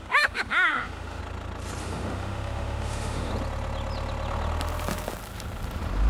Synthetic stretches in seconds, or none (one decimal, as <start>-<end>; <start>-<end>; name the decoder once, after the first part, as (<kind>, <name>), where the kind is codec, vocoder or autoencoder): 0.0-1.2 (autoencoder, DAC-VAE); 1.8-3.3